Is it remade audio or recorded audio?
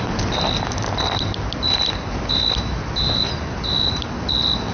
recorded